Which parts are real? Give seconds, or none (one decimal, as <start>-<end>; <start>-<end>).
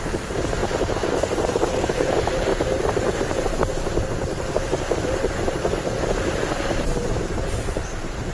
none